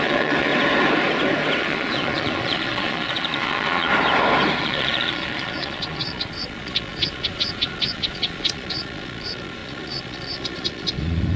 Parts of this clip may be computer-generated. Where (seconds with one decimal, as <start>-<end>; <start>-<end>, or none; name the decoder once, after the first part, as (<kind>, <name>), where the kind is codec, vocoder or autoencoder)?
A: 0.0-0.5 (vocoder, Vocos); 1.6-3.9; 4.6-11.4